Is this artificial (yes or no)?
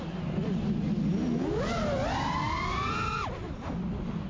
no